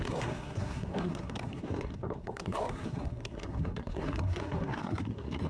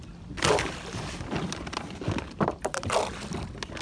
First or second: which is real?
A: second